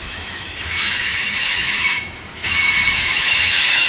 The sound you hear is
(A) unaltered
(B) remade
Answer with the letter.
B